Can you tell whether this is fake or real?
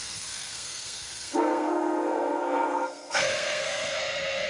fake